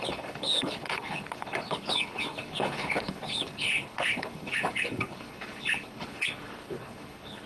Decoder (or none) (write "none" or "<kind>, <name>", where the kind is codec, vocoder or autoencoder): codec, HILCodec